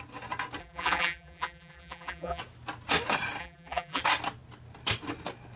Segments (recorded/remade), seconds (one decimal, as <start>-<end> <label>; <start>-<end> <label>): 0.0-0.6 recorded; 0.6-2.4 remade; 2.4-3.4 recorded; 3.4-4.0 remade; 4.0-5.6 recorded